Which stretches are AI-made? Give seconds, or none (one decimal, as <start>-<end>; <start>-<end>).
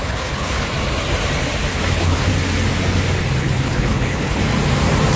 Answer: 0.0-0.7; 1.7-2.3; 3.4-4.4